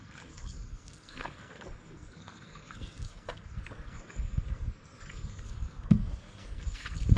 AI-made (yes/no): yes